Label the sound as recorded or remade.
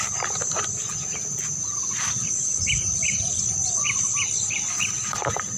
recorded